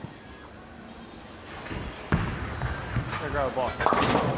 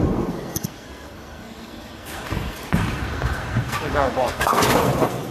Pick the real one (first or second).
first